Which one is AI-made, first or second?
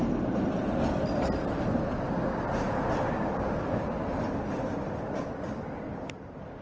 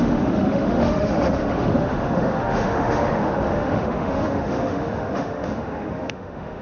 second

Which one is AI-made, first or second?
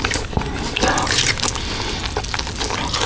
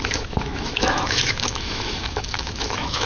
second